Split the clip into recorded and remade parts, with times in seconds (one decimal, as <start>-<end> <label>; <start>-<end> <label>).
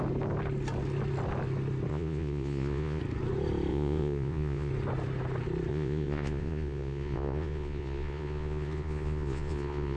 0.0-1.9 recorded; 1.9-3.0 remade; 3.0-3.7 recorded; 3.7-4.7 remade; 4.7-5.7 recorded; 5.7-10.0 remade